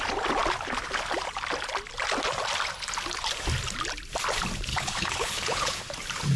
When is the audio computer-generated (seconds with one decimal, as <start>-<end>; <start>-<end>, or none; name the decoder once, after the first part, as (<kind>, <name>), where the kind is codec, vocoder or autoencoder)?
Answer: 4.7-5.8 (codec, HILCodec)